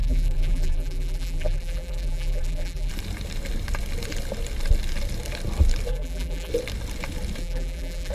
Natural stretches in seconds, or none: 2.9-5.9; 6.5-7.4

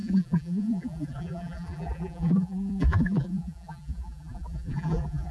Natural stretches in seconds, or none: none

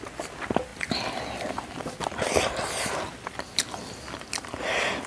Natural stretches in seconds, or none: 0.0-5.1

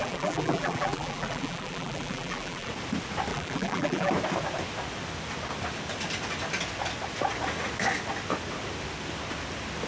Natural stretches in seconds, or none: 2.7-3.3; 4.1-9.9

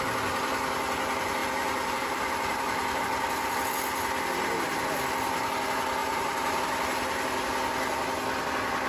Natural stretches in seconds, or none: 0.0-1.4; 3.0-6.0; 6.6-8.9

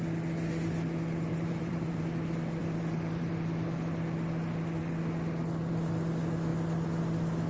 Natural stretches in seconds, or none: 0.0-1.3; 2.0-2.6; 3.3-7.5